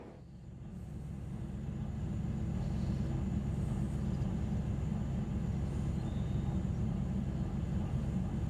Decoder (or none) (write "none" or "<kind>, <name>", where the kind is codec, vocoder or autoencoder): none